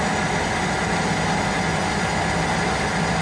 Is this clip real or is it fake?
real